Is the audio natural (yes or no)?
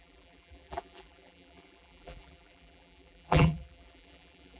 no